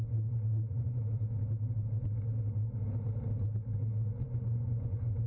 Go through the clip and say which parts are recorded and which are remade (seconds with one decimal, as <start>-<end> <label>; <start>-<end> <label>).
0.0-1.0 remade; 1.0-4.2 recorded; 4.2-5.3 remade